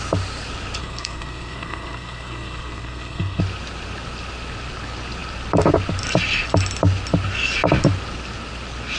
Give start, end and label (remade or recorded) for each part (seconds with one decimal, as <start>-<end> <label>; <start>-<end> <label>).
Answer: 0.0-0.8 recorded; 0.8-3.4 remade; 3.4-9.0 recorded